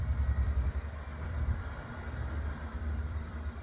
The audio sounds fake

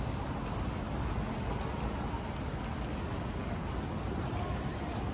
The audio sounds real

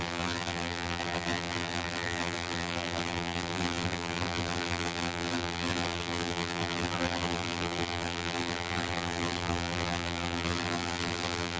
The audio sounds fake